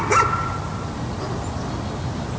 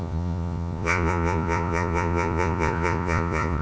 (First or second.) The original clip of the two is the first